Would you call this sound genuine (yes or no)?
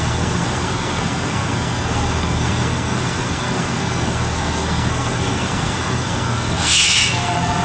no